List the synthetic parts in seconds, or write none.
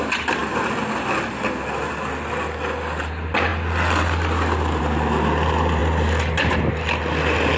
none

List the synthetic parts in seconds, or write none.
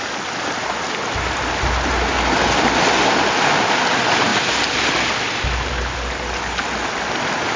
none